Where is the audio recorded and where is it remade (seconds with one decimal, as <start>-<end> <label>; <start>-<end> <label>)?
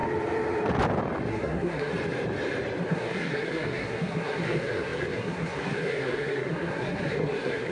0.0-1.3 recorded; 1.3-1.9 remade; 1.9-2.9 recorded; 2.9-7.7 remade